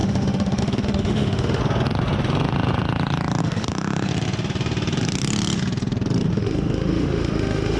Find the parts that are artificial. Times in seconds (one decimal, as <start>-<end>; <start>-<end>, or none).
0.0-1.6; 3.4-4.1; 6.3-7.8